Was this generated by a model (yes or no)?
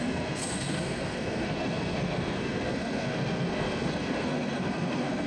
yes